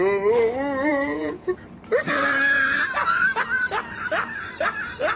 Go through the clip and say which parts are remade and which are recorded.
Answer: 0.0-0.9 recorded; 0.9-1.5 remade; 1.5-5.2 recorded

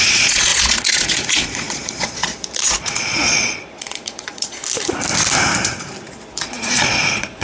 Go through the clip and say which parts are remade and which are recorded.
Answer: 0.0-4.6 remade; 4.6-6.1 recorded; 6.1-7.4 remade